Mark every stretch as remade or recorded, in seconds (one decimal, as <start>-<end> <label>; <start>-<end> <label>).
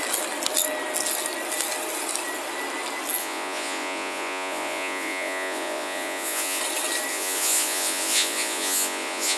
0.0-3.2 recorded; 3.2-6.6 remade; 6.6-7.1 recorded; 7.1-9.4 remade